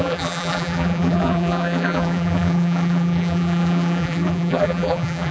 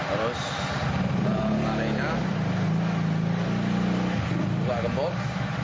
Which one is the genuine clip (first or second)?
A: second